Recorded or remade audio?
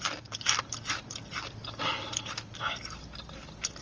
remade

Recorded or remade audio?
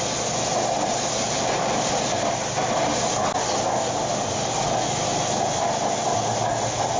recorded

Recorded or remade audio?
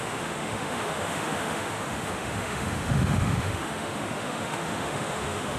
remade